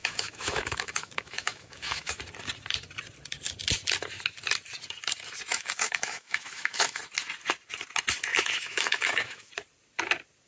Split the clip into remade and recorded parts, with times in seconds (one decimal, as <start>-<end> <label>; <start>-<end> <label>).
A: 0.0-2.2 remade; 2.2-5.5 recorded; 5.5-7.0 remade; 7.0-8.3 recorded; 8.3-9.5 remade; 9.5-10.5 recorded